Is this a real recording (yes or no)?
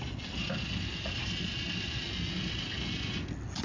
yes